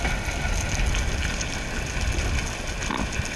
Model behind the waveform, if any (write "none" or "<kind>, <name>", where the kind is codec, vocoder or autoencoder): none